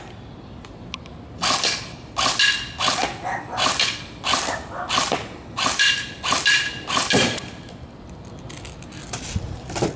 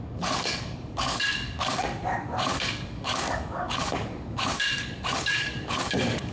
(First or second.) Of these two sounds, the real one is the first